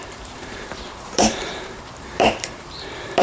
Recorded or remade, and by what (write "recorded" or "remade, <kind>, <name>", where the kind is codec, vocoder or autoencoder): remade, vocoder, BigVGAN v2